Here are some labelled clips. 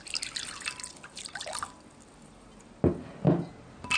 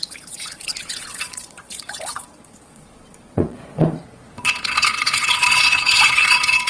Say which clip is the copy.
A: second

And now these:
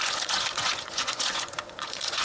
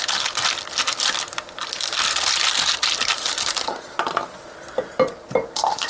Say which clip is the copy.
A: first